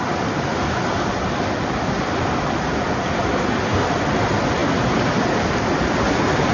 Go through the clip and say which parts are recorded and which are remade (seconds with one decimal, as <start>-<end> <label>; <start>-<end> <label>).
0.0-6.5 recorded